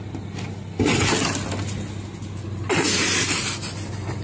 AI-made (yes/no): no